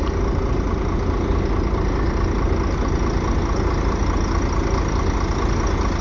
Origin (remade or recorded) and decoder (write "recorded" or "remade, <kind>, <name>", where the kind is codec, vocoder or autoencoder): recorded